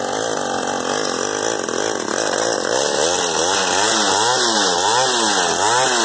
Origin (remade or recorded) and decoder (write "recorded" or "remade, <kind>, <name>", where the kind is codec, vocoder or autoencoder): recorded